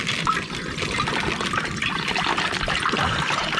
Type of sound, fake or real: real